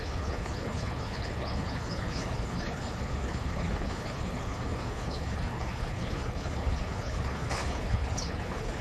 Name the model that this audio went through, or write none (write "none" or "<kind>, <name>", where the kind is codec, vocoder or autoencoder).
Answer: codec, HILCodec